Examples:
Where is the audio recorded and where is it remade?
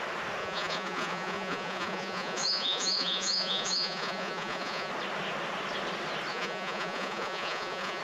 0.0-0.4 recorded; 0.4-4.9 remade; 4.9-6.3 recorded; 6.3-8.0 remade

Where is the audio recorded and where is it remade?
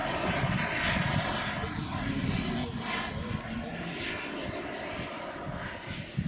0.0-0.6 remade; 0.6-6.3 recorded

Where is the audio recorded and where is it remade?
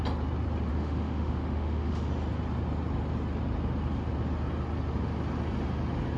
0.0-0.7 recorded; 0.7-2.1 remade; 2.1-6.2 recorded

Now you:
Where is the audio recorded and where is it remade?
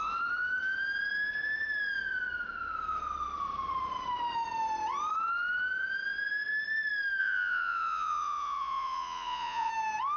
0.0-7.2 recorded; 7.2-9.7 remade; 9.7-10.2 recorded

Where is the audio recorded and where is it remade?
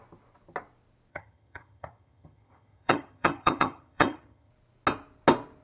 0.0-1.1 recorded; 1.1-4.5 remade; 4.5-5.6 recorded